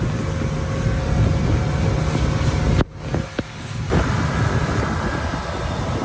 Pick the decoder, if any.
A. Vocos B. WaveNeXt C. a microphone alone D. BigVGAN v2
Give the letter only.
C